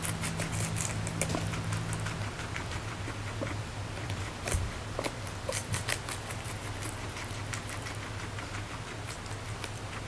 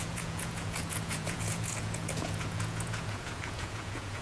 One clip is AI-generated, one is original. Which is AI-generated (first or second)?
second